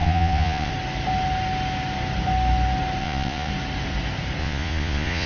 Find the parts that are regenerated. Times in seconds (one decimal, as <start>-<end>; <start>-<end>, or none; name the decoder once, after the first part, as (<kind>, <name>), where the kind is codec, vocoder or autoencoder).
0.0-0.7 (vocoder, Vocos); 3.0-3.5; 4.4-5.3